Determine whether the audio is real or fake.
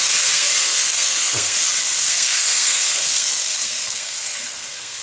fake